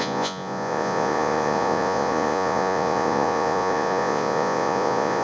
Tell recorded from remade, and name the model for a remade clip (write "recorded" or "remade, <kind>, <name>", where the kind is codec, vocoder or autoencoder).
remade, vocoder, Vocos